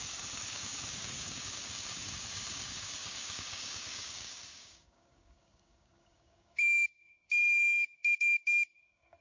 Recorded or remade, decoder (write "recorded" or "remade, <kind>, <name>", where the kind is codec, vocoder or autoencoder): remade, codec, DAC